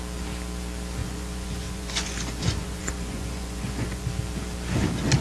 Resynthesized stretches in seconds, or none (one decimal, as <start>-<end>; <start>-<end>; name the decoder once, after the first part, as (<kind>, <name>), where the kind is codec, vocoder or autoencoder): 1.0-4.1 (vocoder, Vocos)

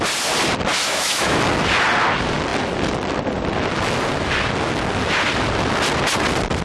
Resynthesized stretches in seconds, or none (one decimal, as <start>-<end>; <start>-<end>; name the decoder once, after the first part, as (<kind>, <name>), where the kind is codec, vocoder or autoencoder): 0.7-1.4 (autoencoder, DAC-VAE)

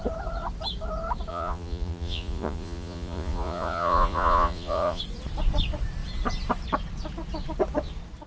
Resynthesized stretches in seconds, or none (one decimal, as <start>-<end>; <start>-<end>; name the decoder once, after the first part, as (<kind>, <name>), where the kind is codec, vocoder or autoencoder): 1.3-5.0 (vocoder, Vocos)

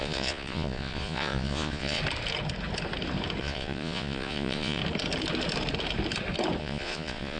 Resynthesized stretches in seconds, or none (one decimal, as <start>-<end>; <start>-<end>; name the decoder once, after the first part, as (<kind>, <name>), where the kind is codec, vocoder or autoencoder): 0.0-2.0 (vocoder, Vocos); 3.4-4.8; 6.6-7.4

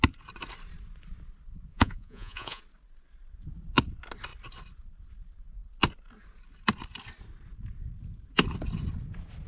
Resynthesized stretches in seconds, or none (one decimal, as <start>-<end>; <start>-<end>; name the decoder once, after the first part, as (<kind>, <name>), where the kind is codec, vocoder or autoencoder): 1.7-2.6 (vocoder, Vocos)

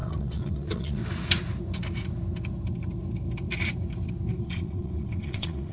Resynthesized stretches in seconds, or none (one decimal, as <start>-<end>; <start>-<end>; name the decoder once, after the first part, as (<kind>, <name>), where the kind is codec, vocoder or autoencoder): 0.0-1.0 (vocoder, WaveNeXt); 4.4-5.7

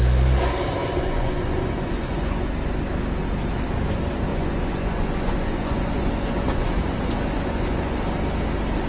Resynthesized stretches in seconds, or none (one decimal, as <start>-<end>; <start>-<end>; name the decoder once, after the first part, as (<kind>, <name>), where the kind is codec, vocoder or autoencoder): 0.8-2.4 (vocoder, Vocos); 4.3-8.0